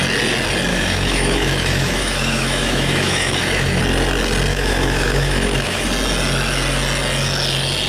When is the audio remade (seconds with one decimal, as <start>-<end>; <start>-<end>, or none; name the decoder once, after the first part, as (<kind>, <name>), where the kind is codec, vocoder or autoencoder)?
0.7-3.8 (autoencoder, DAC-VAE); 4.5-5.9